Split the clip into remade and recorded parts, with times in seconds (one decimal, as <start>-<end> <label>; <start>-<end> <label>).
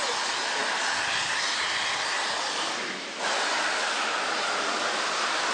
0.0-5.5 recorded